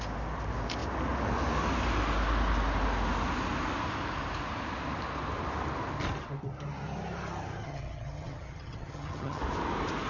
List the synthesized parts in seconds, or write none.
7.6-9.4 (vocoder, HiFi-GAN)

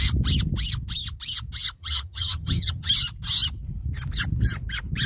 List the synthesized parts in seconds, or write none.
1.8-2.9 (vocoder, HiFi-GAN)

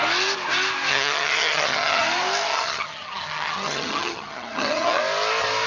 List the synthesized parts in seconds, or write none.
0.9-2.0 (vocoder, HiFi-GAN); 2.5-5.0

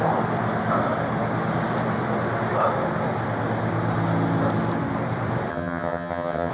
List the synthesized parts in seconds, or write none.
5.5-6.5 (vocoder, HiFi-GAN)

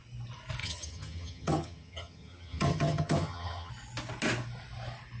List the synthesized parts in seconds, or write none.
0.6-3.7 (vocoder, HiFi-GAN)

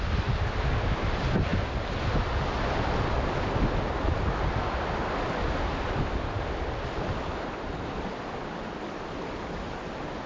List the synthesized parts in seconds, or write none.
none